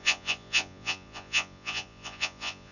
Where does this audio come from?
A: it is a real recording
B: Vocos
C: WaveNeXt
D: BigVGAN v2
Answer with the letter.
B